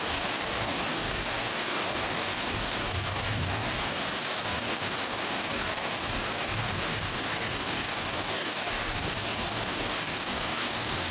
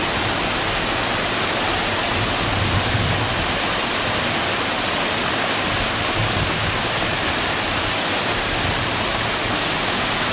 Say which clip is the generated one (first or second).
first